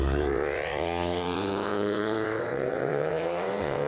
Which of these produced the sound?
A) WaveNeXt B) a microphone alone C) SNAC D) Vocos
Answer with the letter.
A